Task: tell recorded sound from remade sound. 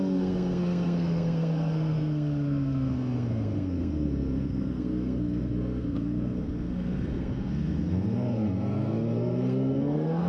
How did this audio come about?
remade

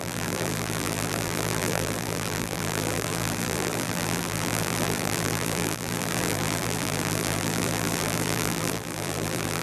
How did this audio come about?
remade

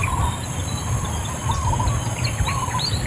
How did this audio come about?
recorded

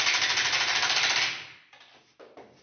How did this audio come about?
recorded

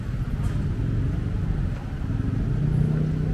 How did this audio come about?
recorded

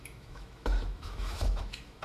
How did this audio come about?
remade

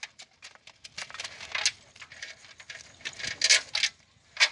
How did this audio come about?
recorded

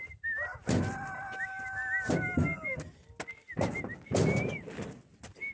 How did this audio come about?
recorded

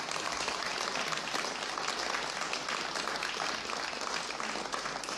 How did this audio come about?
recorded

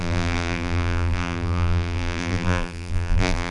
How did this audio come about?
remade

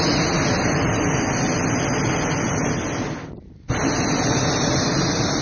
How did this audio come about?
recorded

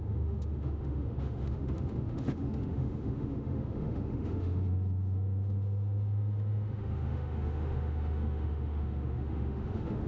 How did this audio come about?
remade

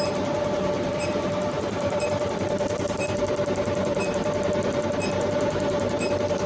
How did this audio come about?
remade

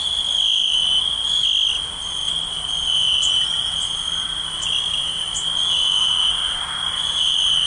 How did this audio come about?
recorded